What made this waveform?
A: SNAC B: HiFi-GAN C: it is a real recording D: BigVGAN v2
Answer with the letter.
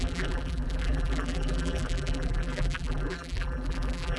D